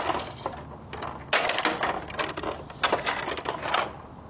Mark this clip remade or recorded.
recorded